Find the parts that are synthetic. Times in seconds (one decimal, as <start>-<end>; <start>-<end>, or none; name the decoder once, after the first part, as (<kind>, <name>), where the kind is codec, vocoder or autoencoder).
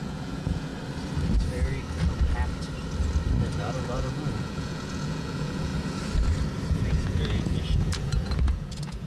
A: 0.0-0.7 (vocoder, Vocos); 3.5-5.7; 6.7-9.1